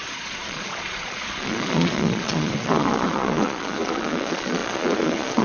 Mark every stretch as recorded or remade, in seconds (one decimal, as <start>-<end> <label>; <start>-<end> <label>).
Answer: 0.0-5.4 remade